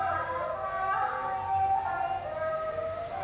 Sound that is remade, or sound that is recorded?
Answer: recorded